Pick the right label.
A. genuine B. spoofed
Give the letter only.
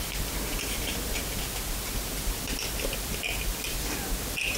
A